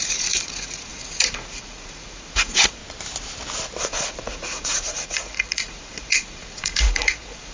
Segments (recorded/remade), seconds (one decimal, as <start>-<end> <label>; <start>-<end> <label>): 0.0-2.8 remade; 2.8-3.8 recorded; 3.8-7.5 remade